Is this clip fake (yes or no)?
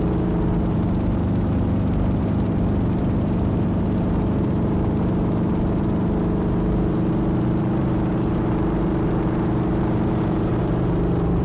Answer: yes